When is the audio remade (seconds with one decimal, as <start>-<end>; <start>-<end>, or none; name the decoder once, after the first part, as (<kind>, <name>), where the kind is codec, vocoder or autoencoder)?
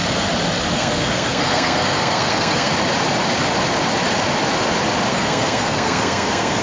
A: 0.7-2.7 (codec, SNAC); 5.1-6.6